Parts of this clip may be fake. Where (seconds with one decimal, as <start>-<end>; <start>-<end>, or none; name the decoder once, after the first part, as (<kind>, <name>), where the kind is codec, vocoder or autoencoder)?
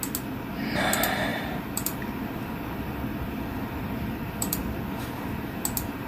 1.3-5.0 (vocoder, BigVGAN v2)